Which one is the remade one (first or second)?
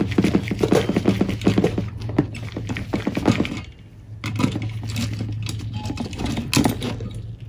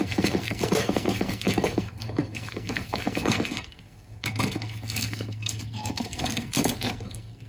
second